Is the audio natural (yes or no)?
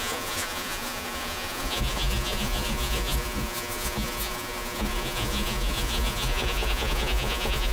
no